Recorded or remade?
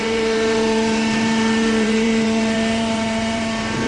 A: remade